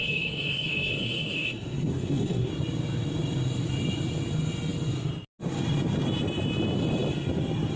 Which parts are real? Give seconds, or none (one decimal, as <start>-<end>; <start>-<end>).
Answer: 2.5-7.8